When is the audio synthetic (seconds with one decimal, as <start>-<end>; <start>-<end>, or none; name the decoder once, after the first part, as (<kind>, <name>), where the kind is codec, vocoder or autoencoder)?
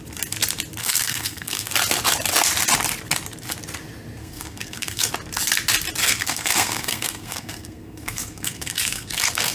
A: 0.8-1.7 (codec, SNAC); 4.2-5.1; 6.0-9.5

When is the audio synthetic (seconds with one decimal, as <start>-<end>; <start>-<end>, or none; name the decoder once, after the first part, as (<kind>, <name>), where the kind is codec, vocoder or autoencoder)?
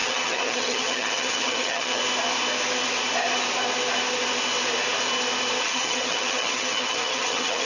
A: 0.0-2.0 (vocoder, HiFi-GAN); 5.6-7.7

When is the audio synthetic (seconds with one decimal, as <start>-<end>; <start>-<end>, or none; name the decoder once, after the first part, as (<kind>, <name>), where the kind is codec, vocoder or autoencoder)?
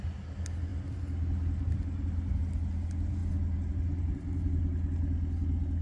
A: none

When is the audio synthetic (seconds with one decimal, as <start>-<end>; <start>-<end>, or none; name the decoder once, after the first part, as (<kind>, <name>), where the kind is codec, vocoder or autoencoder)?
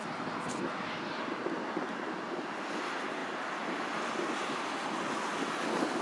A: none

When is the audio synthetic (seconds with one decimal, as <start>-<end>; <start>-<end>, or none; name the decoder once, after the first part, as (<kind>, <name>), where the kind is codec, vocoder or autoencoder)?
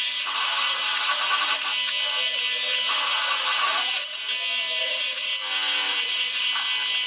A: 0.0-1.7 (vocoder, Vocos); 2.9-4.2; 4.8-5.3; 6.0-6.5